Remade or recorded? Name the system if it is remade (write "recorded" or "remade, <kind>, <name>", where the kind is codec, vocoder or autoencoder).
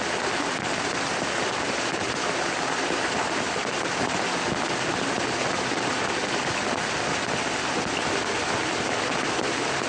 recorded